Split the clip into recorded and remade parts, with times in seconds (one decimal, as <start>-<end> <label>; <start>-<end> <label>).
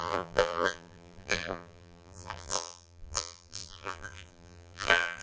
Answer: 0.0-5.2 remade